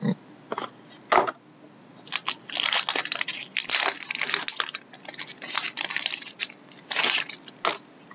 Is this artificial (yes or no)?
no